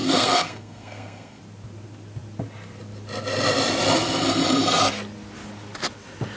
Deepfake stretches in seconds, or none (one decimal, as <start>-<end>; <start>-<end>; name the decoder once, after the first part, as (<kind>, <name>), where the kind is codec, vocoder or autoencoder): 0.0-1.4 (codec, SNAC)